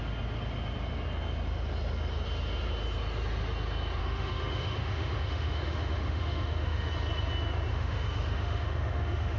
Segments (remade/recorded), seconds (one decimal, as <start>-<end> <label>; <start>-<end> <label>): 0.0-4.0 recorded; 4.0-6.9 remade; 6.9-7.7 recorded; 7.7-9.4 remade